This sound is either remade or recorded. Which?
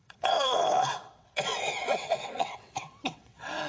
remade